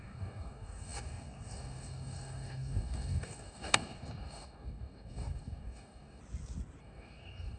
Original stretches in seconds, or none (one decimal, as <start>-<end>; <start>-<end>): 6.2-6.8